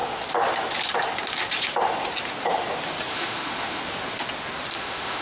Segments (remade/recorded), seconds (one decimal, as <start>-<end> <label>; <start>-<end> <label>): 0.0-3.1 recorded; 3.1-3.8 remade; 3.8-4.7 recorded; 4.7-5.2 remade